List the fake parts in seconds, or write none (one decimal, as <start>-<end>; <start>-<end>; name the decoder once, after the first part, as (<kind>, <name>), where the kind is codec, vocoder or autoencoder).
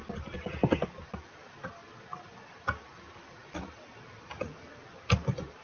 none